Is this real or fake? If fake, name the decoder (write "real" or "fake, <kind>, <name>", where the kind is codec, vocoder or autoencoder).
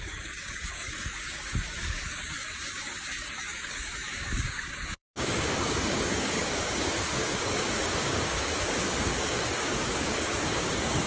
fake, codec, DAC